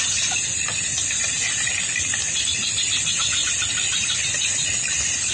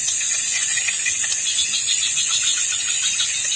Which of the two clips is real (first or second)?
first